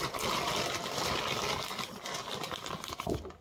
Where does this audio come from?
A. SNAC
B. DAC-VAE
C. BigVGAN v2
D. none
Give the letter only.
D